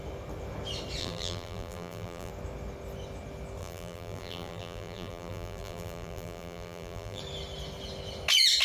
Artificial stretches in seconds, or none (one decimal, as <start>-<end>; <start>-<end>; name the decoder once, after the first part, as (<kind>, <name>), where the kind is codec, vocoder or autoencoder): 1.0-2.3 (vocoder, BigVGAN v2); 3.6-7.2